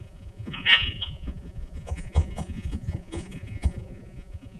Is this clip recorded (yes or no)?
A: no